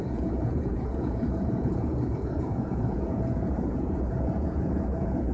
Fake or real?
fake